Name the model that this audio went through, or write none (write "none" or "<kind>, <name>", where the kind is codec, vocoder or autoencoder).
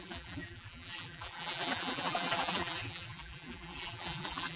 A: vocoder, BigVGAN v2